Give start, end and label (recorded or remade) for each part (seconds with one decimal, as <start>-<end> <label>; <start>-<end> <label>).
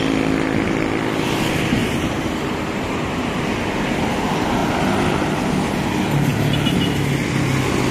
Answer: 0.0-1.8 recorded; 1.8-3.4 remade; 3.4-7.9 recorded